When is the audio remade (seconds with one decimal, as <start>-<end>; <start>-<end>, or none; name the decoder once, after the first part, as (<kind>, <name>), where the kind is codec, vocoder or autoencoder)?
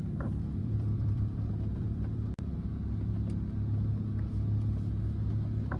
0.6-2.7 (vocoder, BigVGAN v2)